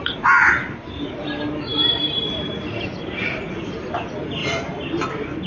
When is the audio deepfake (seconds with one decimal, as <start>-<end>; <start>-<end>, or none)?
1.7-3.8; 4.4-5.5

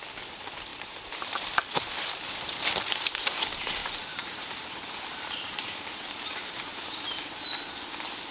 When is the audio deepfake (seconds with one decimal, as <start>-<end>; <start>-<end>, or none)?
0.7-1.2; 3.8-7.1

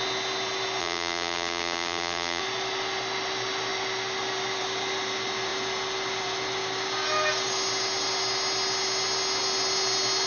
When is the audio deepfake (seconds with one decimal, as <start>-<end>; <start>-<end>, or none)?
0.8-2.4

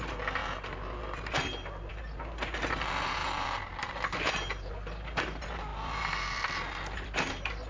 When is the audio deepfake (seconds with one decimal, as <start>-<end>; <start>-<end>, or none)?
3.2-4.7; 5.7-7.7

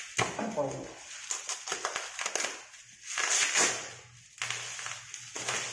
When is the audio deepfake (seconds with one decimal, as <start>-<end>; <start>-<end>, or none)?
none